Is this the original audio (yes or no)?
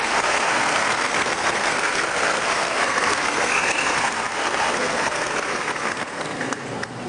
no